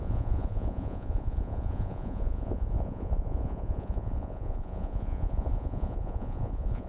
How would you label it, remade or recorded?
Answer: remade